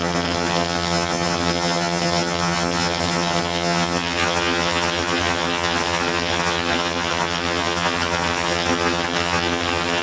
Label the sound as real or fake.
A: fake